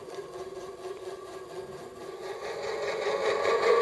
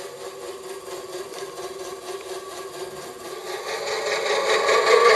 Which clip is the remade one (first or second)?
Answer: first